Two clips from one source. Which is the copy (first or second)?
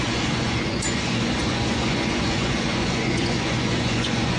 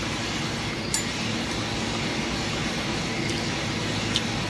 first